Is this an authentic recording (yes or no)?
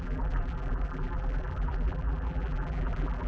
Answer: no